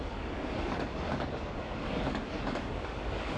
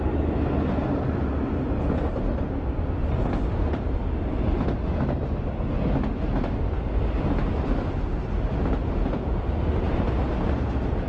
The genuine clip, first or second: second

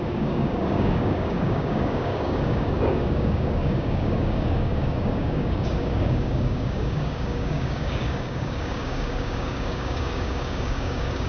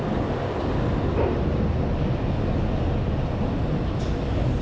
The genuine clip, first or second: second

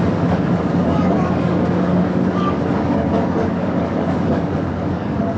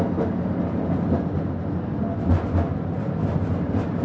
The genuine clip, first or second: second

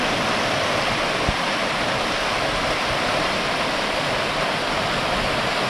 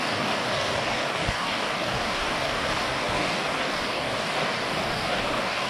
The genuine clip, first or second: first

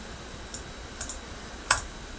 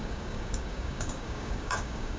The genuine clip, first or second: first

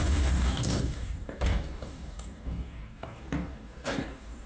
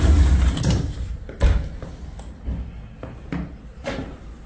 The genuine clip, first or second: second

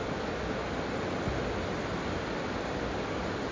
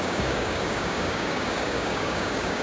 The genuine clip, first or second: first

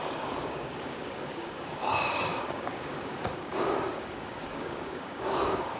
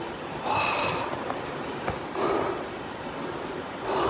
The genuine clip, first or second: second